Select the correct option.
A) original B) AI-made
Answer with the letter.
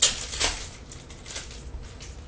A